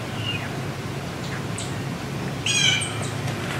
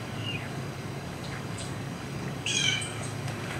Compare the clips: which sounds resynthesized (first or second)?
second